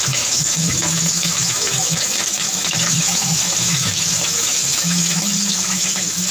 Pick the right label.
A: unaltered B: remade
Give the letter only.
B